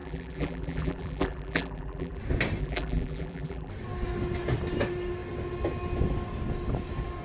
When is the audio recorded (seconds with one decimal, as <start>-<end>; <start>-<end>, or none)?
2.2-2.6; 3.7-7.2